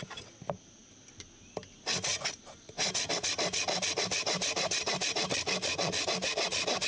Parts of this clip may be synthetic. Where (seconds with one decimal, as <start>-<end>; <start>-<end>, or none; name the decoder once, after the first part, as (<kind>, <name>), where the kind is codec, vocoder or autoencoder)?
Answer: none